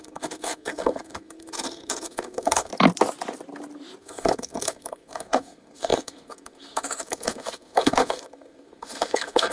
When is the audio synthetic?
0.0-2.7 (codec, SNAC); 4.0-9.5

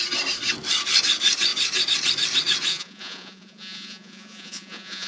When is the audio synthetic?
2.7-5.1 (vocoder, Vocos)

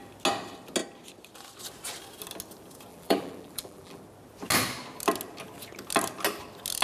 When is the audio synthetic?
2.9-4.0 (vocoder, BigVGAN v2)

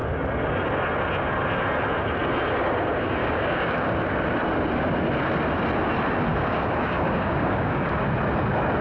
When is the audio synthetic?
3.2-3.9 (codec, DAC); 6.3-7.9